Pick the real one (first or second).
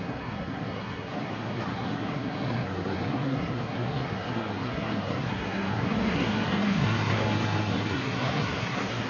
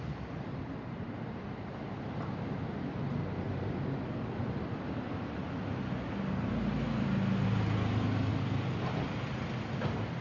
second